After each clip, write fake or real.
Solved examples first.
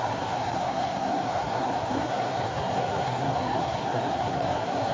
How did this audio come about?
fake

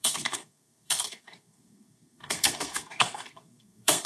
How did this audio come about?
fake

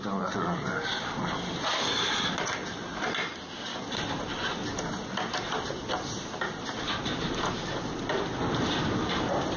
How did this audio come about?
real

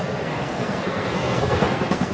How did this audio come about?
fake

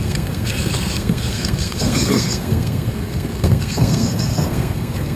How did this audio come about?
fake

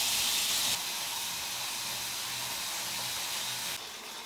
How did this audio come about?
real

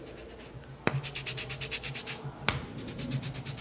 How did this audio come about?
real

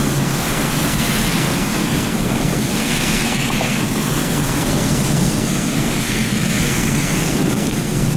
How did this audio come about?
fake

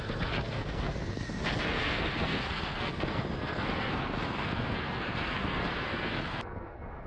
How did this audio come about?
fake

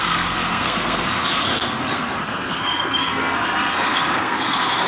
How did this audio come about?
fake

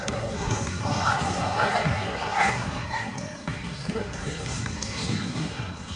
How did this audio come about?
fake